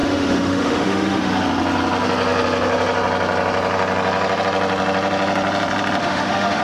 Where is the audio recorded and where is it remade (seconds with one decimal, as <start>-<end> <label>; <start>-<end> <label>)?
0.0-1.3 remade; 1.3-6.0 recorded; 6.0-6.6 remade